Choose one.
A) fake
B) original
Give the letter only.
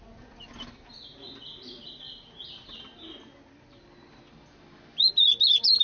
B